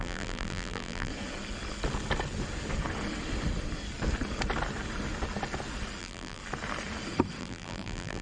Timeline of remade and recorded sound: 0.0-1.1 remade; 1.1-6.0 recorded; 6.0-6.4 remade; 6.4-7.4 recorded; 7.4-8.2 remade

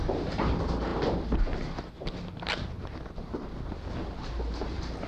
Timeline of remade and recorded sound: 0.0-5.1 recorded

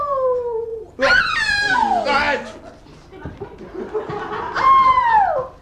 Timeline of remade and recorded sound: 0.0-0.7 recorded; 0.7-1.2 remade; 1.2-1.6 recorded; 1.6-2.2 remade; 2.2-5.6 recorded

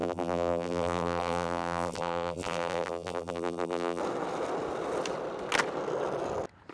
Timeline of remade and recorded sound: 0.0-4.0 remade; 4.0-6.7 recorded

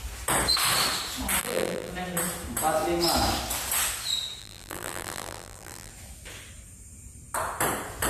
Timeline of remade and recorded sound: 0.0-1.4 recorded; 1.4-1.9 remade; 1.9-4.4 recorded; 4.4-5.9 remade; 5.9-8.1 recorded

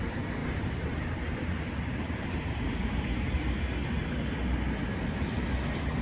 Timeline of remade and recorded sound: 0.0-0.4 recorded; 0.4-3.5 remade; 3.5-6.0 recorded

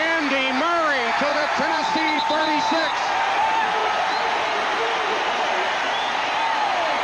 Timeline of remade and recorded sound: 0.0-1.3 recorded; 1.3-2.6 remade; 2.6-7.0 recorded

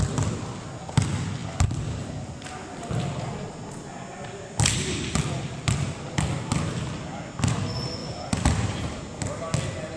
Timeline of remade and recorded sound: 0.0-8.0 recorded; 8.0-9.0 remade; 9.0-10.0 recorded